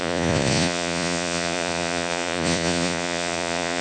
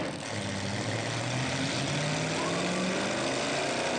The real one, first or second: second